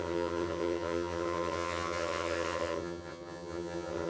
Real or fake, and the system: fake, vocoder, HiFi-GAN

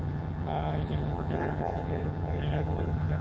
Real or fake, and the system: fake, vocoder, HiFi-GAN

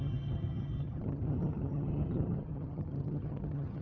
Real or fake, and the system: fake, vocoder, HiFi-GAN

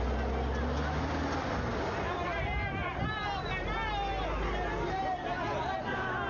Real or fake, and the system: real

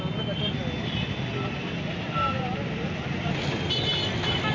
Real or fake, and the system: real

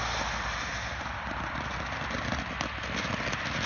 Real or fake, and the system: real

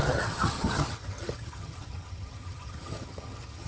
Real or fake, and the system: fake, vocoder, HiFi-GAN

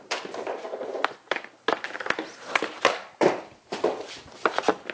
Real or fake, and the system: real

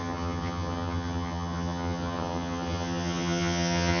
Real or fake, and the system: fake, vocoder, HiFi-GAN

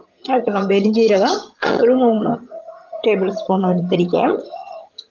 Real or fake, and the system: fake, vocoder, HiFi-GAN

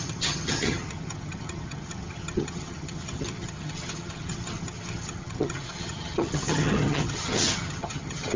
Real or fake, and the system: fake, vocoder, HiFi-GAN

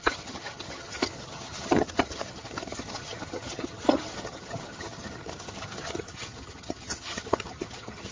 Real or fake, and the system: fake, vocoder, HiFi-GAN